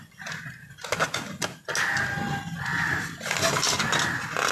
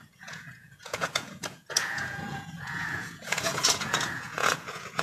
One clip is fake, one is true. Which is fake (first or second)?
second